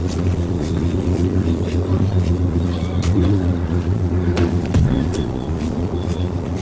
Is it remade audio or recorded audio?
remade